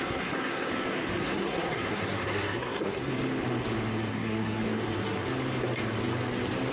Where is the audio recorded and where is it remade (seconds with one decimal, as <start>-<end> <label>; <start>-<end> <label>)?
0.0-0.7 remade; 0.7-1.2 recorded; 1.2-3.1 remade; 3.1-4.1 recorded; 4.1-4.6 remade; 4.6-6.7 recorded

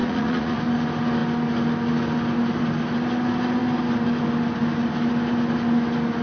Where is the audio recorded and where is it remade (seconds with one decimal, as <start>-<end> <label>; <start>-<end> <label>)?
0.0-0.6 remade; 0.6-6.2 recorded

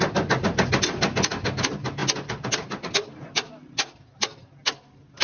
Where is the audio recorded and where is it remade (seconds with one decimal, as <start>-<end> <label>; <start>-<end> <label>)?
0.0-5.2 recorded